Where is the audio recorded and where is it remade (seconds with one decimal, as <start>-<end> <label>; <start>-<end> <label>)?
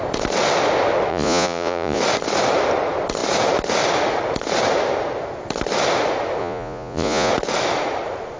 0.0-1.1 recorded; 1.1-2.0 remade; 2.0-6.4 recorded; 6.4-7.3 remade; 7.3-8.4 recorded